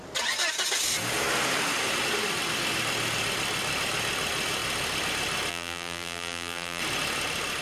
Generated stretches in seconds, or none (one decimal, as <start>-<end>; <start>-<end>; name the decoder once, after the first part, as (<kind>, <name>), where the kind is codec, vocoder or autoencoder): 5.5-6.8 (vocoder, BigVGAN v2)